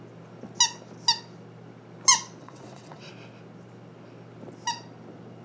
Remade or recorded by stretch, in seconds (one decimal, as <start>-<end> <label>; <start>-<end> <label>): 0.0-2.4 recorded; 2.4-3.1 remade; 3.1-5.4 recorded